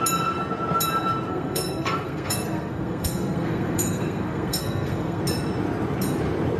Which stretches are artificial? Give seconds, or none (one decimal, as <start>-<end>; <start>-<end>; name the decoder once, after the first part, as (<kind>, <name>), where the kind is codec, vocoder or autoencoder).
1.3-5.2 (codec, SNAC)